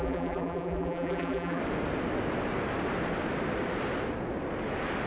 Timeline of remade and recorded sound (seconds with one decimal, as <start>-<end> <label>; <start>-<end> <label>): 0.0-1.6 remade; 1.6-5.1 recorded